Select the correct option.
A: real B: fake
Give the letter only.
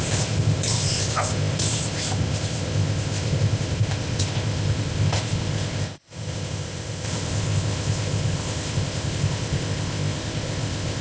B